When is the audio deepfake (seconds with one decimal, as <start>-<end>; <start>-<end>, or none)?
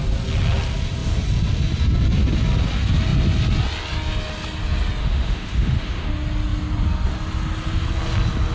5.0-6.1